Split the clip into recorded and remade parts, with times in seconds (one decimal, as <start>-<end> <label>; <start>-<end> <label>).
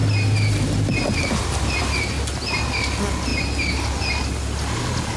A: 0.0-5.2 recorded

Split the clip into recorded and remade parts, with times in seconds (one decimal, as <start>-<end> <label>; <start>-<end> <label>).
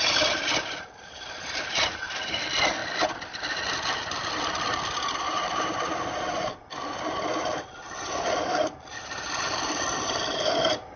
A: 0.0-11.0 recorded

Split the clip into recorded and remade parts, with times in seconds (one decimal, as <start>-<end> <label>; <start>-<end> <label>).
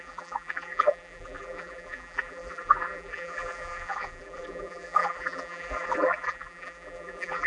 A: 0.0-7.5 remade